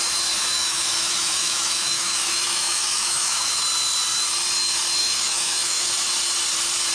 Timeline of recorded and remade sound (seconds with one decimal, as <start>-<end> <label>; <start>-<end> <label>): 0.0-0.5 recorded; 0.5-3.5 remade; 3.5-5.0 recorded; 5.0-5.9 remade; 5.9-6.9 recorded